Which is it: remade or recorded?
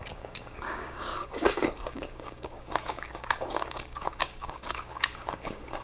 remade